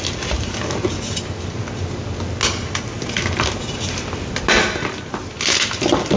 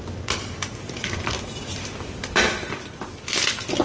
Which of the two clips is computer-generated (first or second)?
second